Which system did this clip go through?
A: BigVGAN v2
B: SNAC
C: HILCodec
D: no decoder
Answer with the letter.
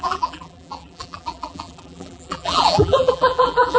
A